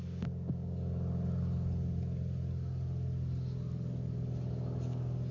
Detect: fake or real real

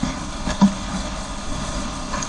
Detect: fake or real fake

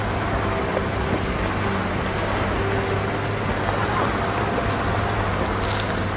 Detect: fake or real real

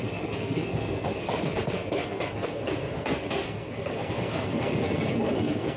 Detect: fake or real fake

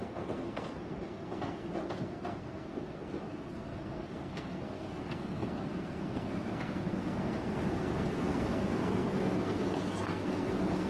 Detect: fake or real fake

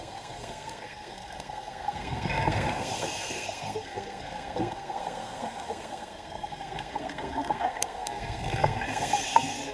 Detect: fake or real fake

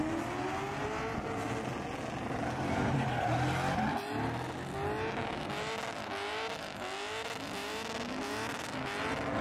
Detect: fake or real real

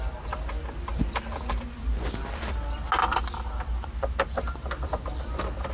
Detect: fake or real real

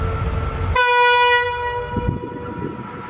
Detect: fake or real real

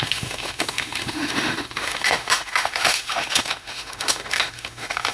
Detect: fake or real fake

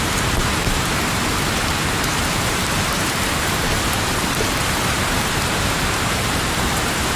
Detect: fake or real fake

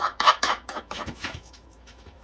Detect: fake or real fake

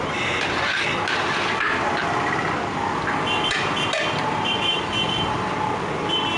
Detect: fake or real real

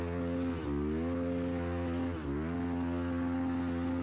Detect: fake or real real